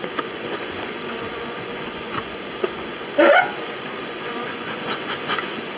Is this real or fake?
fake